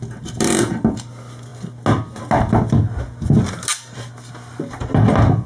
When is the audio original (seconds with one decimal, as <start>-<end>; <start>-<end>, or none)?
0.0-5.5